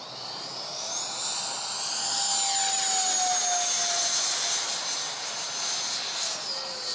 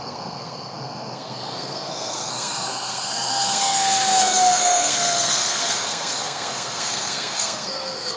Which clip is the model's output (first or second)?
second